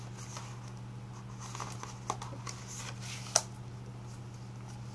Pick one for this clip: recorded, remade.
recorded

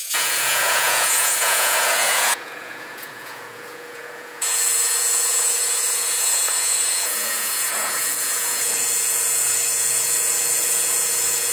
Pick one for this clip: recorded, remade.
remade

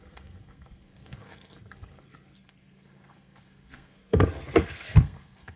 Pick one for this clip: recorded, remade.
remade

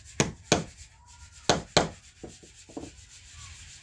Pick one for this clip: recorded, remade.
recorded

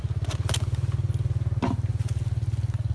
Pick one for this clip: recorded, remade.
recorded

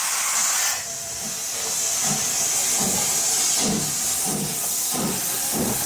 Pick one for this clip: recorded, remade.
recorded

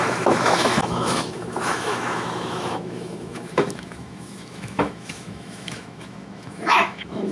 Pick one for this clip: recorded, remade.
remade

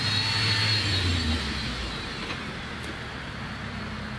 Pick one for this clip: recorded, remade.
recorded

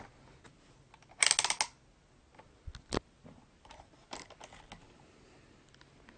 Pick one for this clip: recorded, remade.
recorded